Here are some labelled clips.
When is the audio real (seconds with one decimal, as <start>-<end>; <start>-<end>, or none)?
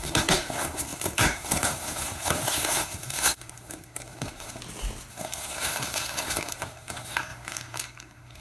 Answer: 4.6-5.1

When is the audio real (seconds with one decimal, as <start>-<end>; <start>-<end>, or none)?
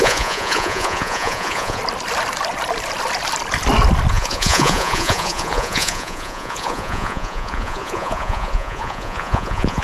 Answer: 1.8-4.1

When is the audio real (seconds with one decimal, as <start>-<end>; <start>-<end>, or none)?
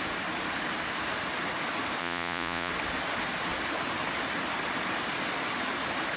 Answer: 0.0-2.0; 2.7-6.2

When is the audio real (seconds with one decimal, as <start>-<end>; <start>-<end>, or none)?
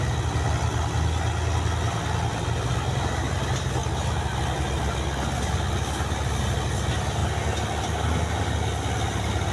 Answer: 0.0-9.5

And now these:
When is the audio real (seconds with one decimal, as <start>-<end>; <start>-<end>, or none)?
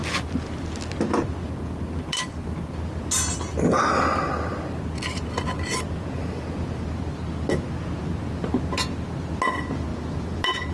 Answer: 0.0-10.7